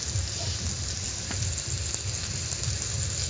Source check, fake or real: real